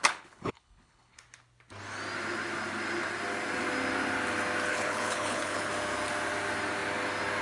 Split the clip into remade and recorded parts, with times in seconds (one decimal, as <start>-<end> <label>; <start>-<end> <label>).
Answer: 0.0-1.2 remade; 1.2-4.7 recorded; 4.7-5.7 remade; 5.7-7.4 recorded